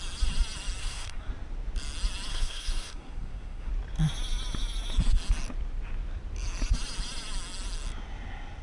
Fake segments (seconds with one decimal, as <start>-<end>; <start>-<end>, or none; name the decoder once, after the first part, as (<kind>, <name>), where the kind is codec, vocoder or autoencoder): 0.8-1.3 (codec, SNAC); 2.3-3.7